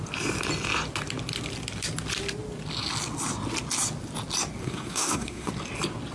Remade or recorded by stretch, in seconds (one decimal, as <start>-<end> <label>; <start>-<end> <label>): 0.0-4.6 recorded; 4.6-5.5 remade; 5.5-6.1 recorded